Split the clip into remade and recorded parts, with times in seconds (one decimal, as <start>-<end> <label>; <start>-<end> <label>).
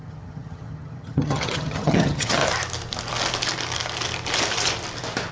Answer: 0.0-2.4 remade; 2.4-5.3 recorded